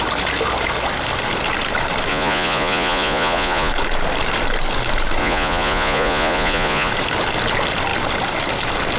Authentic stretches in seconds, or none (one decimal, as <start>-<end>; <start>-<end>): 0.0-2.1; 3.7-5.2; 6.9-9.0